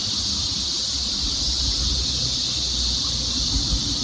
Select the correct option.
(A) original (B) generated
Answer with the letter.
A